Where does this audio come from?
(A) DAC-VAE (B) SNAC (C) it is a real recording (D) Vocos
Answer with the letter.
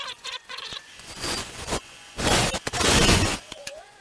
D